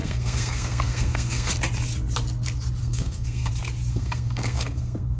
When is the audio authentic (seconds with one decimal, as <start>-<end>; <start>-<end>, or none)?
1.5-2.8; 3.5-3.9